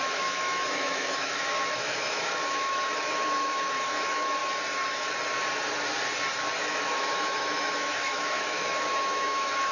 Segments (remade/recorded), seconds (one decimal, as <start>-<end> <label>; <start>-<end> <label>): 0.0-4.4 remade; 4.4-6.6 recorded; 6.6-9.7 remade